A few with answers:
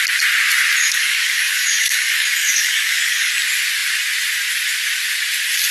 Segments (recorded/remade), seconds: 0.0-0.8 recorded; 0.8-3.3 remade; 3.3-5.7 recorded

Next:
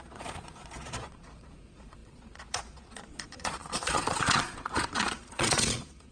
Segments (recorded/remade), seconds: 0.0-6.1 remade

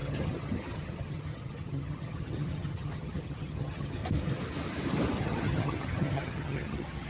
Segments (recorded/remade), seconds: 0.0-4.0 remade; 4.0-5.2 recorded; 5.2-7.1 remade